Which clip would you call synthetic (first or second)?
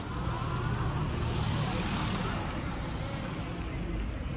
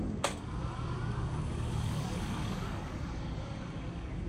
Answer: second